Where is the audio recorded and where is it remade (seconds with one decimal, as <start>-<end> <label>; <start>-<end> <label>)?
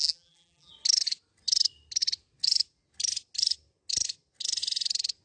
0.0-0.7 remade; 0.7-5.2 recorded